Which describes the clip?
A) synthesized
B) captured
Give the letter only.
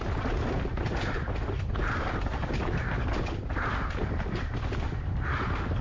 B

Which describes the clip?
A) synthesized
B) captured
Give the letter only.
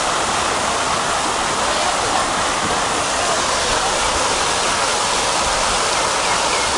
B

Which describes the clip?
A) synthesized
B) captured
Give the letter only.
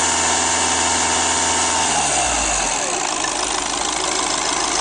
B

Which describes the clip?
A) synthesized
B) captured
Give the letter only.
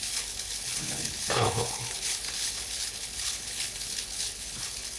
A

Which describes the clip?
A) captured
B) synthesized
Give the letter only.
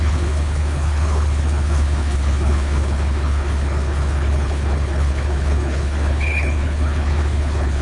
B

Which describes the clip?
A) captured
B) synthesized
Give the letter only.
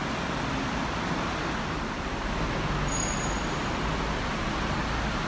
A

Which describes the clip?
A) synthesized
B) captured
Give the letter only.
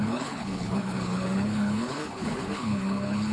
A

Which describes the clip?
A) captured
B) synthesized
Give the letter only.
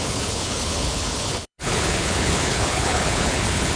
B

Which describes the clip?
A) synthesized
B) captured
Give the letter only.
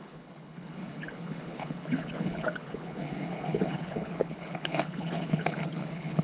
A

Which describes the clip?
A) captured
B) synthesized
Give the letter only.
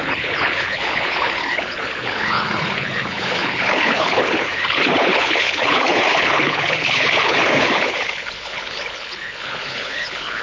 B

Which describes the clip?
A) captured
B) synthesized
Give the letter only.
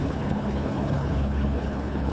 B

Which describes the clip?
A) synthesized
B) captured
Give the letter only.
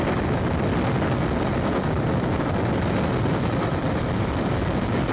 B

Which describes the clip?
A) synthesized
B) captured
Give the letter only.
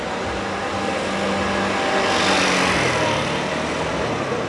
B